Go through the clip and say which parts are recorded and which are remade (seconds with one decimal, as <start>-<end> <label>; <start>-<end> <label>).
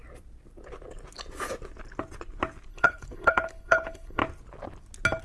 0.0-2.7 recorded; 2.7-4.2 remade; 4.2-5.2 recorded